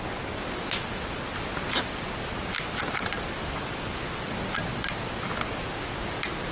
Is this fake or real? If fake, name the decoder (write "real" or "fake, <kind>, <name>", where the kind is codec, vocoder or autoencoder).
real